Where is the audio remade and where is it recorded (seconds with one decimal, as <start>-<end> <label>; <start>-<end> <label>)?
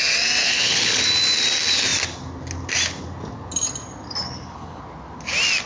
0.0-0.4 recorded; 0.4-1.0 remade; 1.0-4.2 recorded; 4.2-4.8 remade; 4.8-5.7 recorded